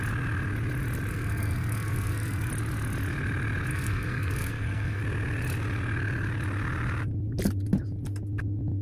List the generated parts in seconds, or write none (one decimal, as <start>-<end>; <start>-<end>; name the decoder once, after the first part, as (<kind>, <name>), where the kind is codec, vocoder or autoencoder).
1.1-2.5 (codec, SNAC); 3.7-5.0

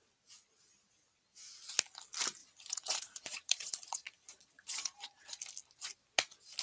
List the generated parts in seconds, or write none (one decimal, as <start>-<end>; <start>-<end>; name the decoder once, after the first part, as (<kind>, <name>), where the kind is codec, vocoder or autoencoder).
2.4-5.4 (vocoder, Vocos)

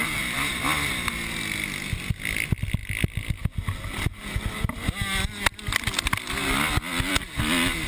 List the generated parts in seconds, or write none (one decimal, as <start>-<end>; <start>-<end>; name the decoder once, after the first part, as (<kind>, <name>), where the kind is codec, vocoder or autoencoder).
none

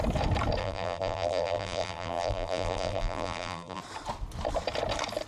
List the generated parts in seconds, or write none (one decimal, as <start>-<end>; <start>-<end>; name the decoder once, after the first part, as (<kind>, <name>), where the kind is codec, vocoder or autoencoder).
0.6-3.8 (vocoder, BigVGAN v2)

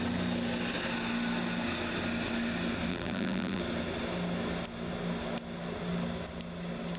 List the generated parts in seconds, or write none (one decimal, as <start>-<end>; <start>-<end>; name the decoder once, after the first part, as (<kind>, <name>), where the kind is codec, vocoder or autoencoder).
2.9-3.6 (vocoder, BigVGAN v2)

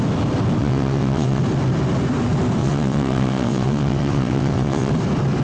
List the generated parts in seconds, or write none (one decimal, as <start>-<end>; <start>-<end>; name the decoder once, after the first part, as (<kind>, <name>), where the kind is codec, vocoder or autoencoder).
0.6-1.4 (vocoder, WaveNeXt); 2.6-4.9

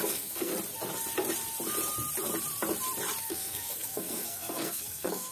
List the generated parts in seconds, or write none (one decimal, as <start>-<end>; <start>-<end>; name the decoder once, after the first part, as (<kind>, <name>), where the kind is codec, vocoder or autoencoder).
0.0-0.5 (codec, SNAC); 3.2-5.3